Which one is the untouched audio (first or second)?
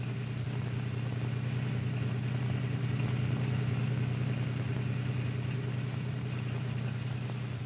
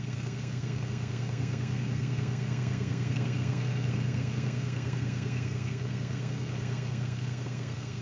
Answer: first